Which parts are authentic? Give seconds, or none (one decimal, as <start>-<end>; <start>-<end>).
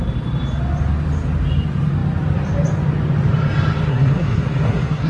0.0-3.9